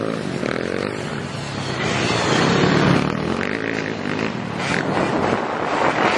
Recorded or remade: recorded